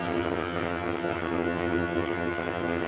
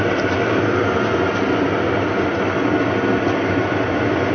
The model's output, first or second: first